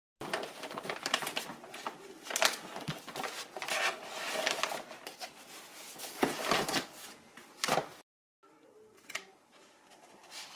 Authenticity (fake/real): real